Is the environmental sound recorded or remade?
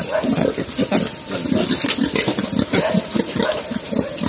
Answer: recorded